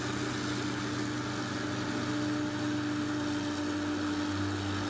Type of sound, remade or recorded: recorded